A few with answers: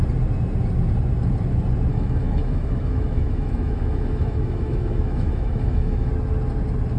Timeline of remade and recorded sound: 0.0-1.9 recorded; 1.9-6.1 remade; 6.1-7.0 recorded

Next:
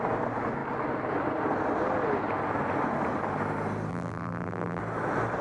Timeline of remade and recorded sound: 0.0-3.9 recorded; 3.9-4.8 remade; 4.8-5.4 recorded

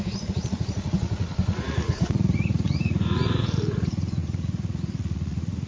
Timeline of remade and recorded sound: 0.0-5.7 remade

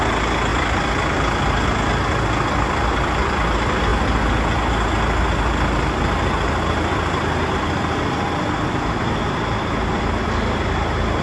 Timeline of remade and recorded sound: 0.0-11.2 recorded

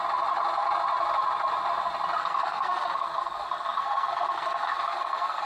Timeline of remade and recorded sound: 0.0-2.2 recorded; 2.2-5.5 remade

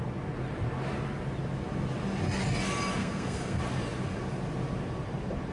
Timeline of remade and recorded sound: 0.0-3.0 recorded; 3.0-3.6 remade; 3.6-5.5 recorded

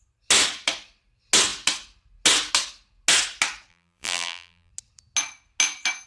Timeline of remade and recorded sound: 0.0-3.7 recorded; 3.7-4.7 remade; 4.7-6.1 recorded